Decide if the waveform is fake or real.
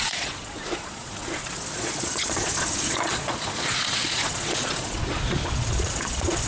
fake